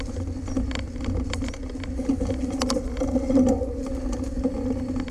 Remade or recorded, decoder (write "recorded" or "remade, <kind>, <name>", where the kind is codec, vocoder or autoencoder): recorded